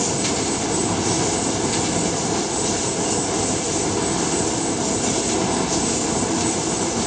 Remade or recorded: recorded